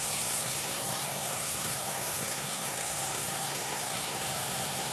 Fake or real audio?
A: fake